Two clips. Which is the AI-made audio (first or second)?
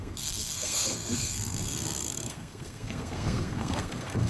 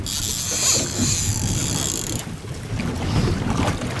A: first